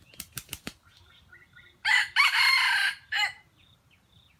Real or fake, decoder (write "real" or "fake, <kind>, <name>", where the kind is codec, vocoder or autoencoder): fake, vocoder, BigVGAN v2